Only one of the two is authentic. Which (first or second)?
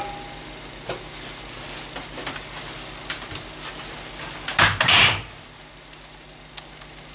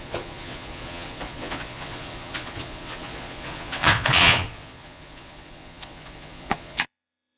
first